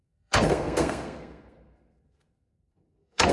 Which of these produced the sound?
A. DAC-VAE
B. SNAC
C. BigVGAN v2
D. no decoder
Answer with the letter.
B